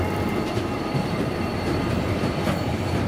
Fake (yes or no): yes